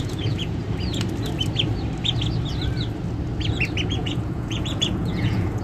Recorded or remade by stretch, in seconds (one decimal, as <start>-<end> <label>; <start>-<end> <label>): 0.0-0.6 remade; 0.6-3.9 recorded; 3.9-5.6 remade